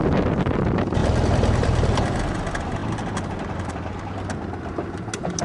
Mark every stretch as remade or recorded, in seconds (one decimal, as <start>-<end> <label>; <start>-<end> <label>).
0.0-1.0 recorded; 1.0-2.2 remade; 2.2-5.4 recorded